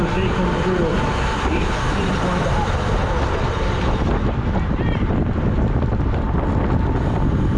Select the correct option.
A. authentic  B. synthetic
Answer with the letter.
A